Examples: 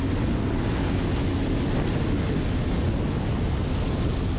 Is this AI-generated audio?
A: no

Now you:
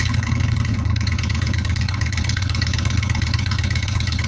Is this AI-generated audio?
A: yes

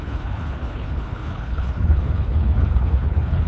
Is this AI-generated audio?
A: yes